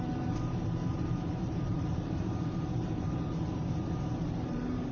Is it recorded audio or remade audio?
remade